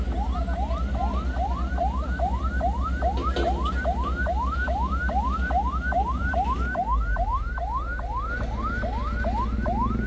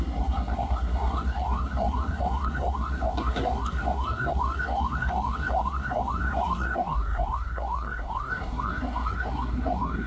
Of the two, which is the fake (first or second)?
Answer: second